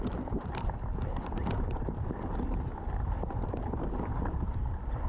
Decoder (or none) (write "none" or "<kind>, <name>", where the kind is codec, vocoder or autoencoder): vocoder, BigVGAN v2